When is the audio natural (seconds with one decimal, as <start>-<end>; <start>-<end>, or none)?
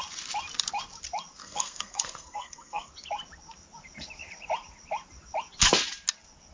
0.0-1.4; 2.9-6.5